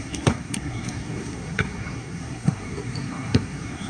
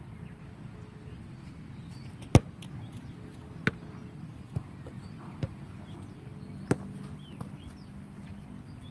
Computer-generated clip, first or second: first